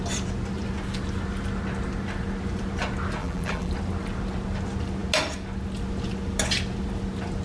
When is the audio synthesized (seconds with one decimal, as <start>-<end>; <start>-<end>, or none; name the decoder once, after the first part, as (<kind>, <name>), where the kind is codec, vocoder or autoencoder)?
3.2-3.7 (vocoder, BigVGAN v2)